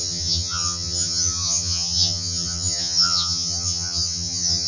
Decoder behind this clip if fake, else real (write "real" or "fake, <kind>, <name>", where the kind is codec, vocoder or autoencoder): fake, vocoder, HiFi-GAN